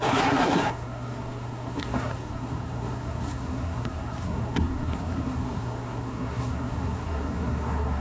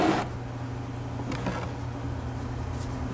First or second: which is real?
second